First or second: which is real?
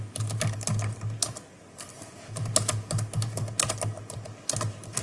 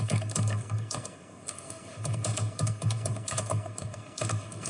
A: first